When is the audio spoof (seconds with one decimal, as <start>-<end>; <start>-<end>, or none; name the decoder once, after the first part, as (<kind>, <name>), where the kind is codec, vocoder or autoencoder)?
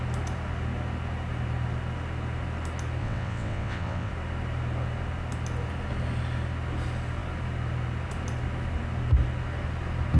3.0-4.1 (vocoder, WaveNeXt)